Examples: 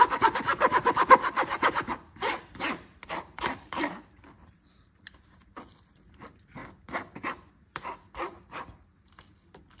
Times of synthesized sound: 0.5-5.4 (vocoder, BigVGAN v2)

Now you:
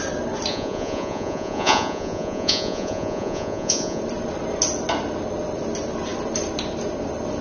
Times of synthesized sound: 0.5-4.0 (vocoder, Vocos)

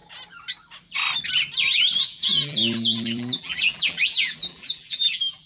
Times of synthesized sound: 2.1-5.5 (vocoder, BigVGAN v2)

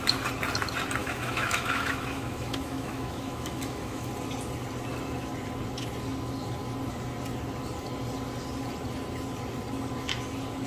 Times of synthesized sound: 1.0-4.1 (autoencoder, DAC-VAE)

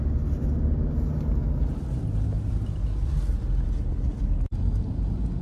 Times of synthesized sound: none

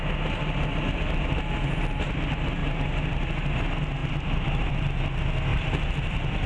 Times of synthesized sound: 4.0-4.7 (vocoder, BigVGAN v2); 5.5-6.5

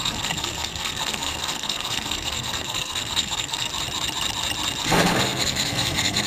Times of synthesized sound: 0.0-3.7 (codec, SNAC); 4.8-6.3

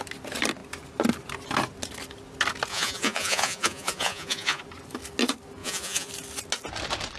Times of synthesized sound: 2.7-4.6 (vocoder, Vocos); 5.6-6.1